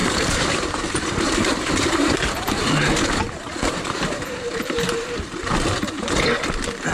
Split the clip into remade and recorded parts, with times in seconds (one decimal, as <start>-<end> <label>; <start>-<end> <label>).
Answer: 0.0-2.7 remade; 2.7-3.2 recorded; 3.2-6.1 remade; 6.1-6.9 recorded